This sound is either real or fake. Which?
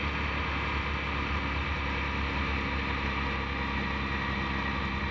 real